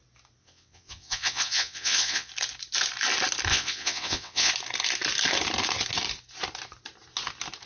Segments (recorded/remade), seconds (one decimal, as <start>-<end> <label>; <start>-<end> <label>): 0.0-0.4 recorded; 0.4-2.3 remade; 2.3-3.5 recorded; 3.5-4.5 remade; 4.5-7.7 recorded